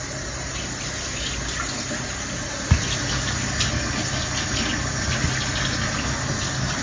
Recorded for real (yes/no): yes